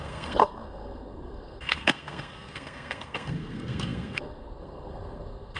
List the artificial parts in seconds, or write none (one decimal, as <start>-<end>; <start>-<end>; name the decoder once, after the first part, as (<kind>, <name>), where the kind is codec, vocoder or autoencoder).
0.0-5.6 (codec, SNAC)